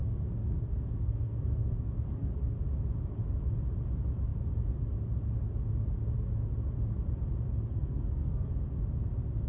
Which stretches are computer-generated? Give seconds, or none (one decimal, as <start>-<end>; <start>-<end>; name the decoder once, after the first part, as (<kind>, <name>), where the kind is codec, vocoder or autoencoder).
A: 0.0-2.3 (codec, SNAC); 7.7-8.5

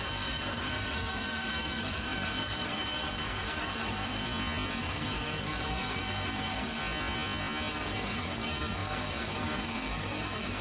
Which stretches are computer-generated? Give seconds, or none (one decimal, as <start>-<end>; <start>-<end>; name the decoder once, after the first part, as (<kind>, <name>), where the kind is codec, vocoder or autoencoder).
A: 0.0-4.2 (codec, SNAC); 4.8-6.8; 7.7-10.6

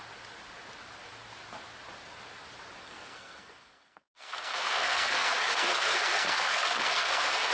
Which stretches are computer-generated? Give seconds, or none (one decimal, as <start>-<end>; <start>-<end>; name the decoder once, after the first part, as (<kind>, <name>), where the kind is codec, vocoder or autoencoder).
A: 2.8-7.5 (codec, SNAC)

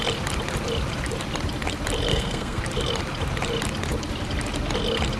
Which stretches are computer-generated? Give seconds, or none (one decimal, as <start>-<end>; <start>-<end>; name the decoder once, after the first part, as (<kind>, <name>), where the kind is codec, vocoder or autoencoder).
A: 2.1-2.6 (codec, SNAC)